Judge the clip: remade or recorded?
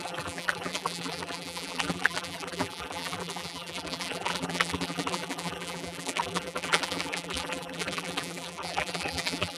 remade